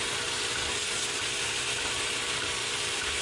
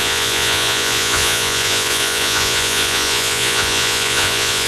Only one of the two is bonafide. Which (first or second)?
first